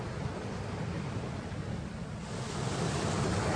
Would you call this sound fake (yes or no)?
no